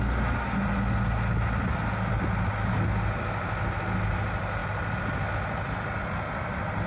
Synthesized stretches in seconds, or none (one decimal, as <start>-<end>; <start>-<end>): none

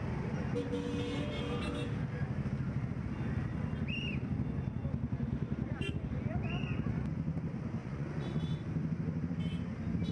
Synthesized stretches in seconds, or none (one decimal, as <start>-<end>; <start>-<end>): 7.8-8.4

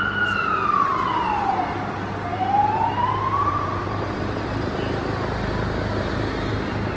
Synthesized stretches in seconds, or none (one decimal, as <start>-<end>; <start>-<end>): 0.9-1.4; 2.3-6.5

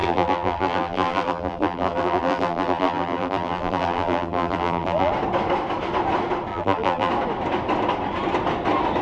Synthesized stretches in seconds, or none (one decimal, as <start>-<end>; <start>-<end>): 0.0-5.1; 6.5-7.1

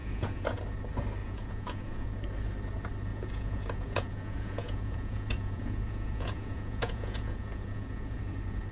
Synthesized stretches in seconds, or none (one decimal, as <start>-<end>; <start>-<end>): 0.0-0.6; 1.2-2.2; 3.1-8.2